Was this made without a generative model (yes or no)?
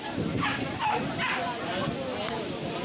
yes